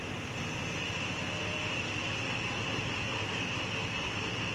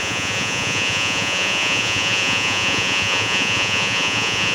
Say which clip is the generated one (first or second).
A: second